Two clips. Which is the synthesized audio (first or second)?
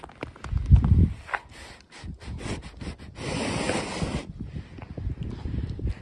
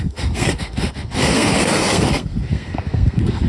second